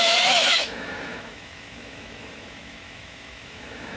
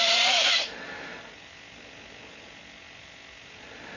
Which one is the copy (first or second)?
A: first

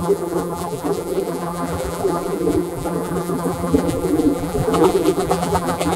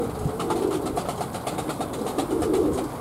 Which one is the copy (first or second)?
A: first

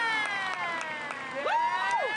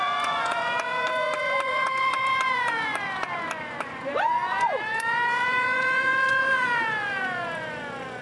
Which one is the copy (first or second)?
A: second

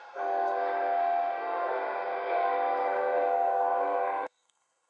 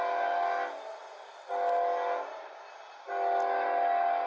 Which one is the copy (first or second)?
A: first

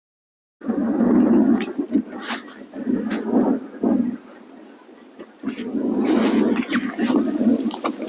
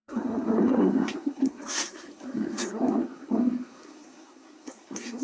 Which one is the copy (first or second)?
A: second